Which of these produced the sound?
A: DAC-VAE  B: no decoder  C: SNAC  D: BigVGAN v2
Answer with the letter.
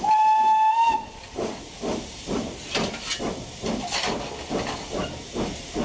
B